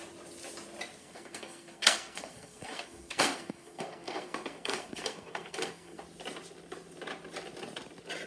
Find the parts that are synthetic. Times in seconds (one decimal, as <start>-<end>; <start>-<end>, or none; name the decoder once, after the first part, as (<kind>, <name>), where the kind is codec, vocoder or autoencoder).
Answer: 1.0-6.0 (codec, SNAC)